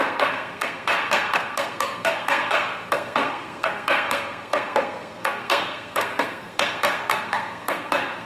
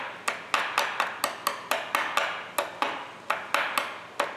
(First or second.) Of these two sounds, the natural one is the second